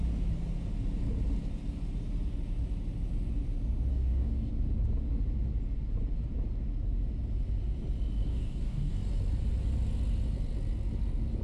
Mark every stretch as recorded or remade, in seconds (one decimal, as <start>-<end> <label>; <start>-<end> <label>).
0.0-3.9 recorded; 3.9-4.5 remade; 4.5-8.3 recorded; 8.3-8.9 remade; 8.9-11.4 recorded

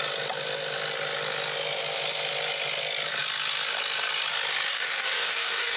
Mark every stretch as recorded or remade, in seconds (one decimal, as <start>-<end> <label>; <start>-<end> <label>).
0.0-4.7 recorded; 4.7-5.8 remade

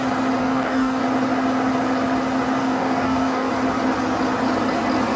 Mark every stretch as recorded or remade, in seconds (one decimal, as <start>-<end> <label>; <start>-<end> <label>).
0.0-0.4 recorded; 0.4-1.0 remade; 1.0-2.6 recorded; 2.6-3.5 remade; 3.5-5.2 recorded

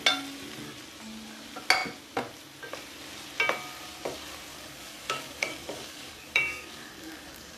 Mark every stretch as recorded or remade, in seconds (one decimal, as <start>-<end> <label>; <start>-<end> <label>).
0.0-4.5 recorded; 4.5-7.6 remade